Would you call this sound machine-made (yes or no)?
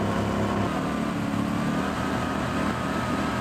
no